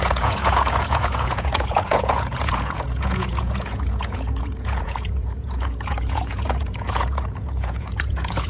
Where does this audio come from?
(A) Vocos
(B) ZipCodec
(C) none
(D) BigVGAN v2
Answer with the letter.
A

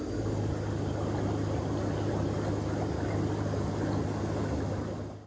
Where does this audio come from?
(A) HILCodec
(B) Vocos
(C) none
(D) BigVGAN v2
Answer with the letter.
C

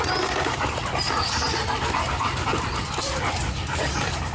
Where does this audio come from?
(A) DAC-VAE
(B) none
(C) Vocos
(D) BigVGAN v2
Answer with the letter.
D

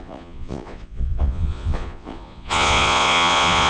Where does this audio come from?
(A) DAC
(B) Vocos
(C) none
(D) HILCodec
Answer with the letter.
B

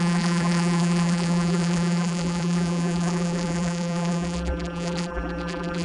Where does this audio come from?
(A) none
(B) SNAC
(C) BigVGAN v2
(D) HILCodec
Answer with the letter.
C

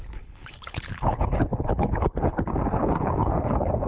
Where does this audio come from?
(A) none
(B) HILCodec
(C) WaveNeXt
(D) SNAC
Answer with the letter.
B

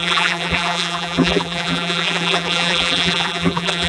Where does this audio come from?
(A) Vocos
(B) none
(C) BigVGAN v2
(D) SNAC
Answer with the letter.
C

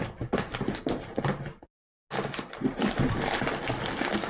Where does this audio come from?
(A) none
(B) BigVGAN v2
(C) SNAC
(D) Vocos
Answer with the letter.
A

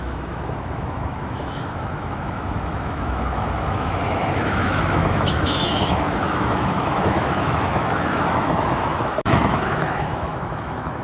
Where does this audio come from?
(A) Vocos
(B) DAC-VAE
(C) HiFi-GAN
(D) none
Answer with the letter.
B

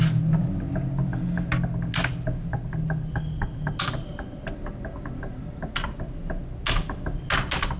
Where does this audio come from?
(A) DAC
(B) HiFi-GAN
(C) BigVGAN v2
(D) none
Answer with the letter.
D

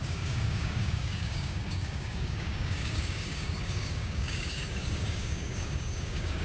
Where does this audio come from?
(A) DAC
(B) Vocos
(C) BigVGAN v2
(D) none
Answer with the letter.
A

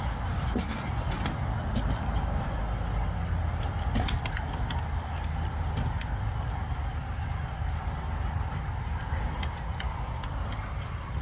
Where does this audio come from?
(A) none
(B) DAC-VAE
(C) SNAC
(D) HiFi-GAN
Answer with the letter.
A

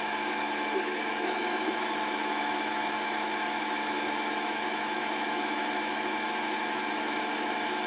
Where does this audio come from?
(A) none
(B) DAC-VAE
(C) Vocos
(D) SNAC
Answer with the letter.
B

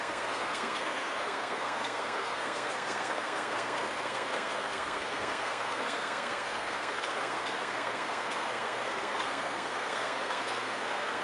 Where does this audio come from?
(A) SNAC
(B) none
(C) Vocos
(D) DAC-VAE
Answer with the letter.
A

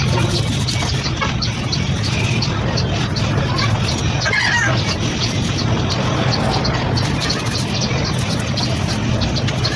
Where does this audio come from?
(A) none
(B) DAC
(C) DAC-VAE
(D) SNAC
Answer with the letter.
A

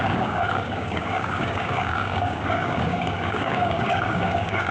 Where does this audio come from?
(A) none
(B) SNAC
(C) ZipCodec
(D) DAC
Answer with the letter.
D